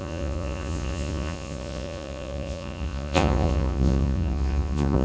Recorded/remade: remade